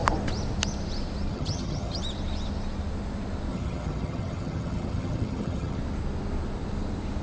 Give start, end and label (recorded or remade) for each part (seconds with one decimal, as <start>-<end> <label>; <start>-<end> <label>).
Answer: 0.0-1.3 recorded; 1.3-2.0 remade; 2.0-3.5 recorded; 3.5-5.8 remade; 5.8-7.2 recorded